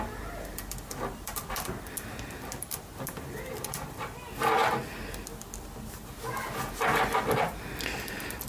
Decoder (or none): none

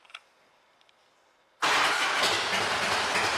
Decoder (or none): none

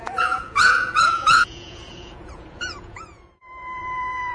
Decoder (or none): vocoder, Vocos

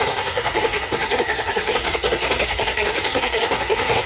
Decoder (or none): codec, SNAC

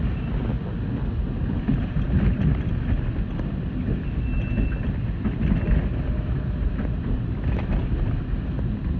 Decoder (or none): none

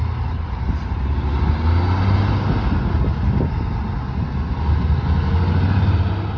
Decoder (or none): none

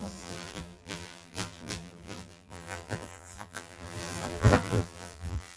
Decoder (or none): vocoder, BigVGAN v2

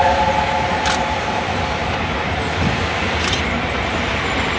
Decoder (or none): none